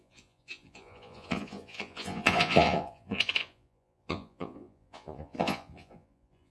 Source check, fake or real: fake